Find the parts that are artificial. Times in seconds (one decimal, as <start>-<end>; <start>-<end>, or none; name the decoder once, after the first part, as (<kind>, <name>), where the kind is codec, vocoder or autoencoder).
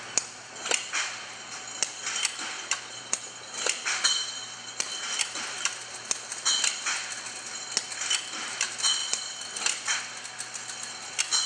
none